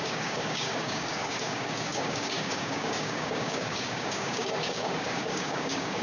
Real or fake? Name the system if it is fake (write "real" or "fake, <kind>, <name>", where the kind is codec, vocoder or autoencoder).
fake, codec, DAC